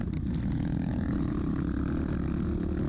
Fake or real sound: real